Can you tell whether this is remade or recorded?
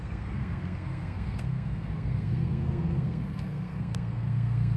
remade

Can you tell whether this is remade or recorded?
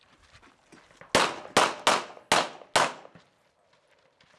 recorded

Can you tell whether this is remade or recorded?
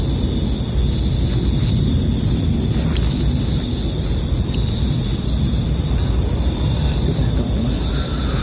recorded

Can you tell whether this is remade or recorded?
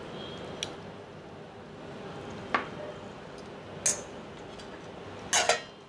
recorded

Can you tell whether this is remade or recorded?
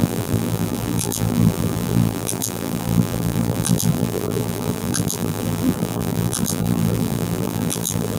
remade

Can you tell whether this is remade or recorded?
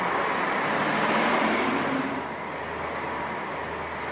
recorded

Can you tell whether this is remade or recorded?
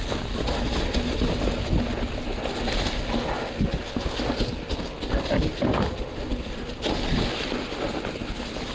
recorded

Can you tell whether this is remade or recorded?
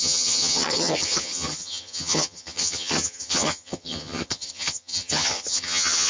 remade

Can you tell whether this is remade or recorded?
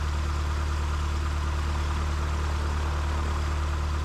recorded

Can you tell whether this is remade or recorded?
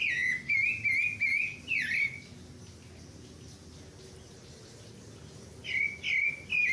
recorded